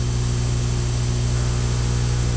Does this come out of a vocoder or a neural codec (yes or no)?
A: no